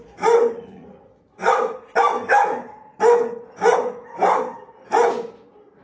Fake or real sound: real